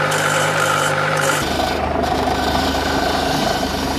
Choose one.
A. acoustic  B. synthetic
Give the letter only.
B